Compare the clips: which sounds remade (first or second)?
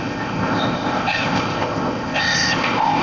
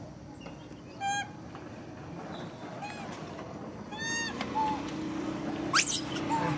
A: first